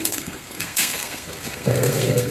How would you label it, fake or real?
fake